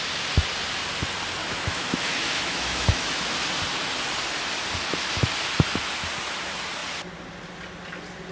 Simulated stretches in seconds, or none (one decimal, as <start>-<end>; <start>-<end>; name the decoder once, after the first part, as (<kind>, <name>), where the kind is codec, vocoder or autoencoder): 1.4-3.3 (autoencoder, DAC-VAE)